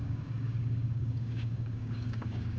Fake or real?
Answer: fake